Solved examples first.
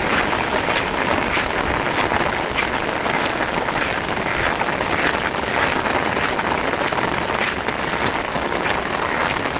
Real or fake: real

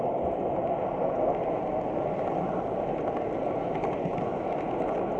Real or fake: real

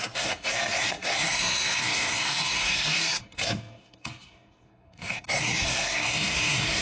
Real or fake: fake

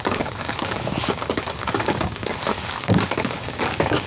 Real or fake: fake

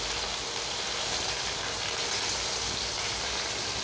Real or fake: real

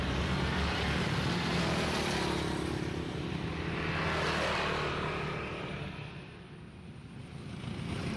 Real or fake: real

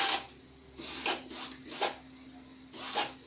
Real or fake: real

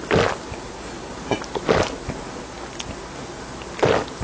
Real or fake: real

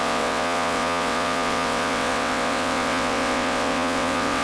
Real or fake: fake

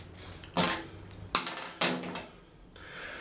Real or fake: real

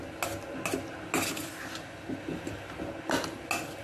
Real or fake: real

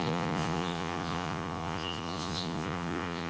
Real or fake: fake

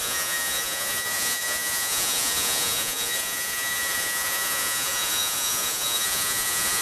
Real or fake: fake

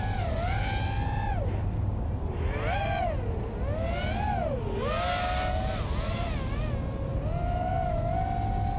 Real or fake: real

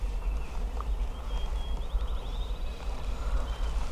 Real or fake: real